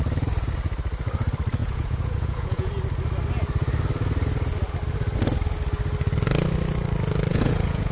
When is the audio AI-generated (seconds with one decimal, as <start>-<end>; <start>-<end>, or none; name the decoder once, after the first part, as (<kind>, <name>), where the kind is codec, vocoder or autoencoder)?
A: 1.6-2.7 (vocoder, Vocos); 7.3-7.9